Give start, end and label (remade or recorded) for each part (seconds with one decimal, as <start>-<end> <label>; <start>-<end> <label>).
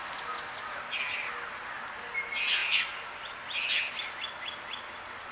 0.0-5.3 recorded